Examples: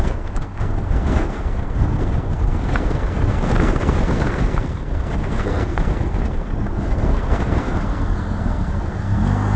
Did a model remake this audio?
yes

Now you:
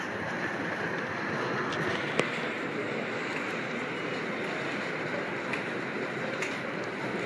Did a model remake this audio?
no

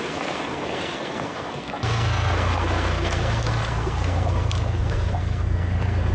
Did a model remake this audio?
yes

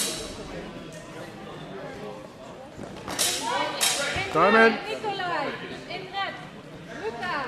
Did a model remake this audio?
no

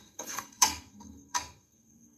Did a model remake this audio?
yes